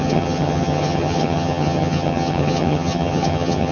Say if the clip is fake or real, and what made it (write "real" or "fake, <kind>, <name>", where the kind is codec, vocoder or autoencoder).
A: fake, vocoder, HiFi-GAN